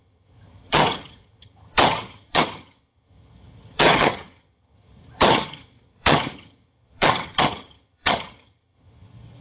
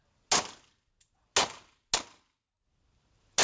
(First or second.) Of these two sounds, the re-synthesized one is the first